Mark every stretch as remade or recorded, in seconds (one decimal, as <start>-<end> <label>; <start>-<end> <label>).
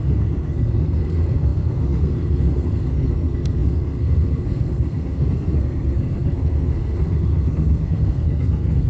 0.0-8.9 remade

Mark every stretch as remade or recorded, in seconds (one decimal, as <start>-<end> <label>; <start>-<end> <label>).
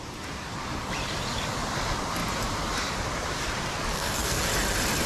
0.0-3.9 recorded; 3.9-4.4 remade; 4.4-5.1 recorded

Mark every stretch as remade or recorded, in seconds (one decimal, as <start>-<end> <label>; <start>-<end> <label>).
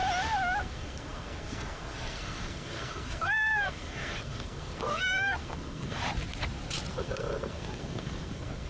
0.0-0.6 recorded; 0.6-6.0 remade; 6.0-6.9 recorded; 6.9-8.7 remade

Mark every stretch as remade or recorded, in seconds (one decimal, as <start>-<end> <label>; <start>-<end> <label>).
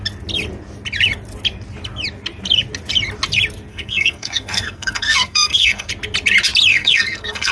0.0-3.7 recorded; 3.7-5.9 remade; 5.9-6.7 recorded; 6.7-7.5 remade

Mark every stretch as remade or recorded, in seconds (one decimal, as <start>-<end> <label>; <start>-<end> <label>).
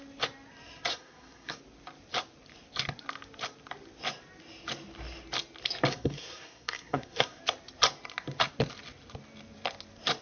0.0-0.9 recorded; 0.9-1.6 remade; 1.6-5.9 recorded; 5.9-7.4 remade; 7.4-10.2 recorded